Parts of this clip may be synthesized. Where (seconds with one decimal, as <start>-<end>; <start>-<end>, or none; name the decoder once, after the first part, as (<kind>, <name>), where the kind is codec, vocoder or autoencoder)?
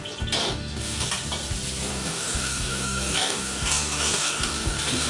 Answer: 0.4-1.1 (codec, DAC); 1.9-5.1